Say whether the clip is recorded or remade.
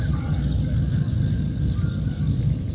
recorded